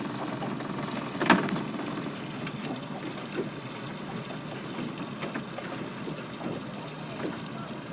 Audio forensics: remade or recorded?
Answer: recorded